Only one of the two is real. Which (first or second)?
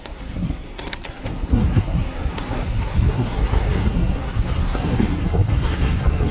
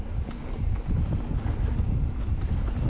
second